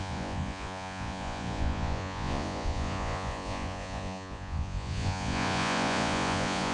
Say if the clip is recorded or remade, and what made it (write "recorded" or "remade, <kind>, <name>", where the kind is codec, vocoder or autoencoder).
remade, vocoder, Vocos